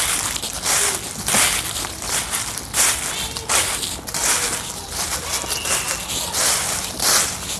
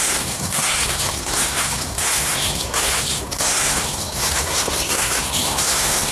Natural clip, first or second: first